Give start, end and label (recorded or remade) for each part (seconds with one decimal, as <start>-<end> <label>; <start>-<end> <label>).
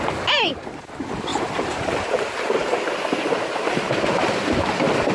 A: 0.0-1.3 recorded; 1.3-4.1 remade; 4.1-5.1 recorded